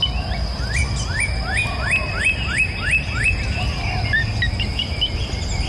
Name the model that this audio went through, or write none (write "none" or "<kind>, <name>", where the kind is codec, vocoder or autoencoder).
none